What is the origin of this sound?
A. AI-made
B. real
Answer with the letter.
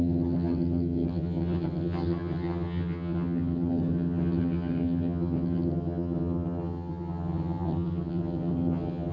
A